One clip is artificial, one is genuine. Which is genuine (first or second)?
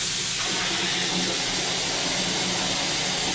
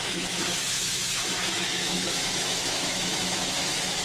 first